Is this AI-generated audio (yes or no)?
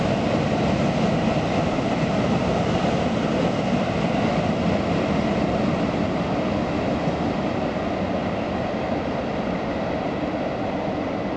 no